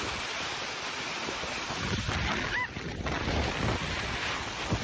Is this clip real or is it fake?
real